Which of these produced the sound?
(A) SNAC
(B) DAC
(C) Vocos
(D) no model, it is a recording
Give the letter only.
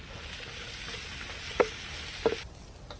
D